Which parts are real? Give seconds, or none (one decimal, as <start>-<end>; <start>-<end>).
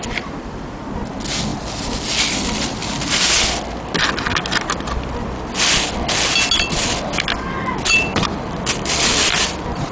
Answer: 1.5-2.3; 2.8-7.9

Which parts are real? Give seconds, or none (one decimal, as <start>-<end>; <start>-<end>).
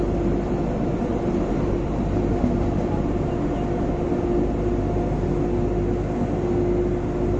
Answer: 0.0-1.1; 2.3-7.4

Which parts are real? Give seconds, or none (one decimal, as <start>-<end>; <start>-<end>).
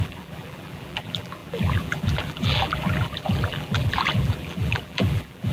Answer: none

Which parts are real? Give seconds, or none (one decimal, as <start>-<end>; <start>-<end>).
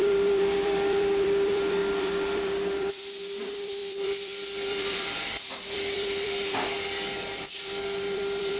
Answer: none